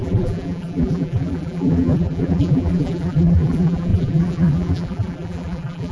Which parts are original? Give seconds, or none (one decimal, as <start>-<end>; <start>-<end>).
none